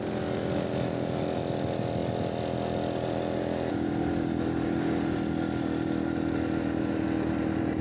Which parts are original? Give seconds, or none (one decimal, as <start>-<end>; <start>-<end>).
0.0-7.8

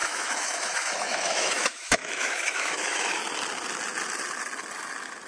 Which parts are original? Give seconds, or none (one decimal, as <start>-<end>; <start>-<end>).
3.2-5.3